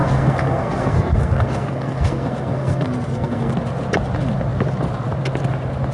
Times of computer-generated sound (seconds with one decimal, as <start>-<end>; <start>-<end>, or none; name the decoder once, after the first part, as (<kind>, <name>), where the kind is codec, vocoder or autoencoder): 0.0-3.5 (codec, SNAC)